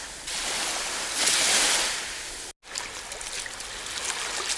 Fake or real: real